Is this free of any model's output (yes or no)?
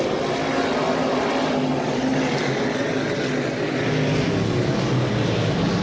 yes